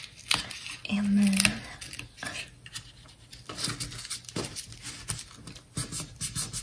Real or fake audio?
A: real